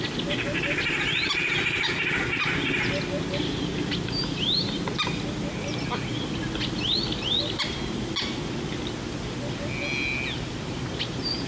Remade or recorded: recorded